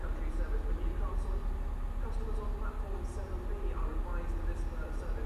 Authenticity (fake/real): real